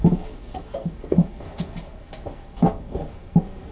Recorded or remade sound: remade